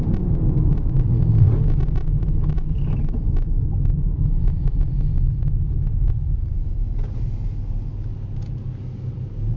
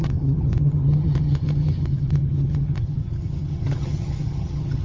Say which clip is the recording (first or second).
first